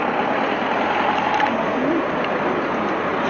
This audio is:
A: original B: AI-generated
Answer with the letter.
A